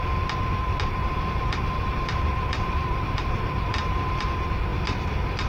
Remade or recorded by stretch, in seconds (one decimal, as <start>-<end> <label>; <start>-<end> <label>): 0.0-1.0 recorded; 1.0-4.3 remade; 4.3-5.5 recorded